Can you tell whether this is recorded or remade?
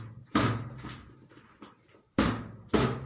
recorded